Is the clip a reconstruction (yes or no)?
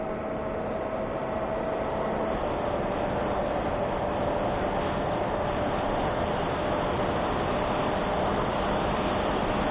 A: no